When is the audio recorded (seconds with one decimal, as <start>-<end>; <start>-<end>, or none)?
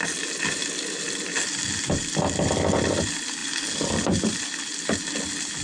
0.0-5.6